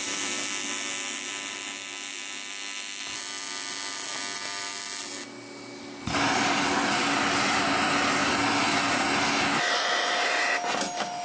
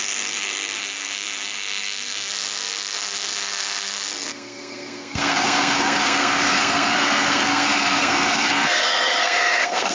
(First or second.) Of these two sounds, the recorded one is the first